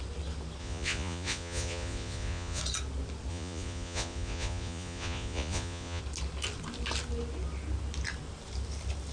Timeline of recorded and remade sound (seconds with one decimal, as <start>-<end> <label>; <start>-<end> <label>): 0.0-0.6 recorded; 0.6-2.6 remade; 2.6-3.3 recorded; 3.3-6.0 remade; 6.0-9.1 recorded